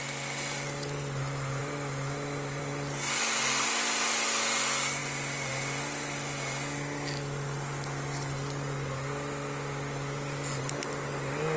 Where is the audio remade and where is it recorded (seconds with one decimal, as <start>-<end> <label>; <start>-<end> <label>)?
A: 0.0-11.6 recorded